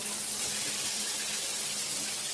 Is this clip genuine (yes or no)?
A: yes